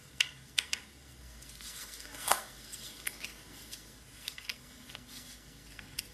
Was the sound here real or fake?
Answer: fake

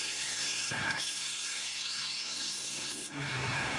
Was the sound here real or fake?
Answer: fake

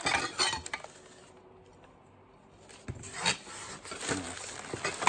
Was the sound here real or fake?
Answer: real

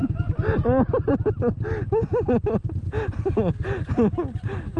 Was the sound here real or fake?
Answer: real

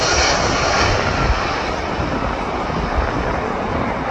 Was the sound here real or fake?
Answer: real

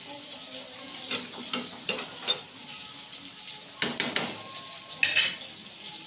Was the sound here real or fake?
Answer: real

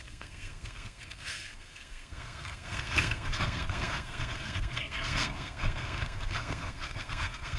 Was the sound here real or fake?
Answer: fake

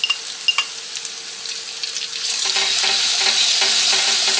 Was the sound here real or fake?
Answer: real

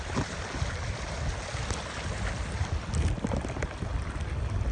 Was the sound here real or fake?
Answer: real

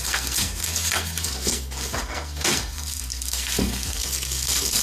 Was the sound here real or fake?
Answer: fake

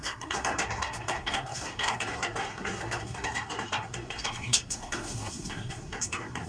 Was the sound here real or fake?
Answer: fake